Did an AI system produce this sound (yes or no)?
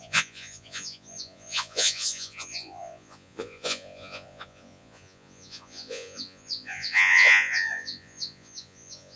yes